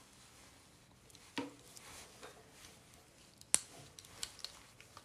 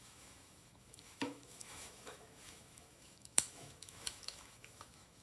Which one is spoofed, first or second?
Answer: second